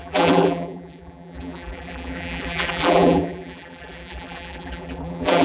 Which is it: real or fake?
fake